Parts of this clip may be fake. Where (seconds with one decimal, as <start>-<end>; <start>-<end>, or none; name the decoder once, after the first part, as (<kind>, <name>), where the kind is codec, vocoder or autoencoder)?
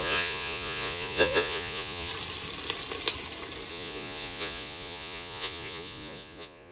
0.0-2.1 (vocoder, Vocos); 3.7-6.7